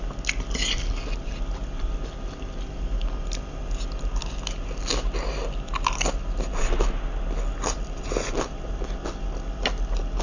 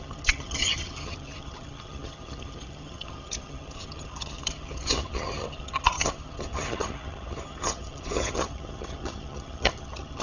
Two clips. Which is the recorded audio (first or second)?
first